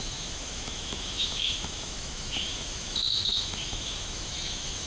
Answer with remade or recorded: remade